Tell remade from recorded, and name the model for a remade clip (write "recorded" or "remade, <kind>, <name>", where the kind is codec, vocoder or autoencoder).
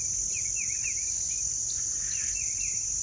recorded